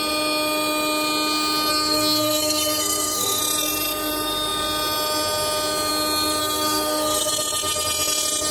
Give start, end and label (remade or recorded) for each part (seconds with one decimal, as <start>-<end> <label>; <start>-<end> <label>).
0.0-1.7 recorded; 1.7-3.4 remade; 3.4-6.4 recorded; 6.4-7.3 remade; 7.3-8.5 recorded